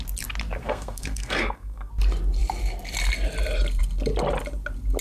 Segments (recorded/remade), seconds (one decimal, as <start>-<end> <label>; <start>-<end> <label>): 0.0-0.6 recorded; 0.6-1.9 remade; 1.9-5.0 recorded